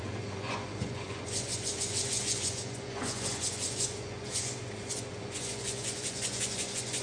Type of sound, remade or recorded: remade